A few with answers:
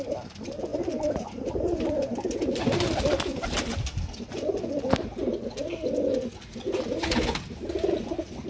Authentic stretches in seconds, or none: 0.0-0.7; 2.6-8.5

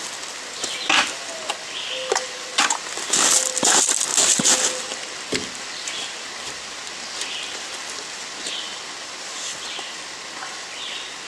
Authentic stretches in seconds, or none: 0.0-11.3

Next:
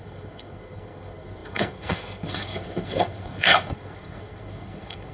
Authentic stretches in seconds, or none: none

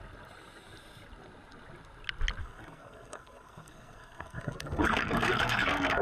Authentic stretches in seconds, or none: 0.0-2.4